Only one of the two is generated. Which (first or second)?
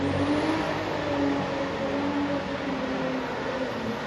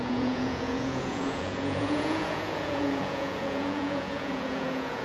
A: second